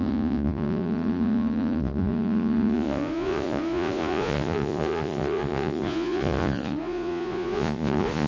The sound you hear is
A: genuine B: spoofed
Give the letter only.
B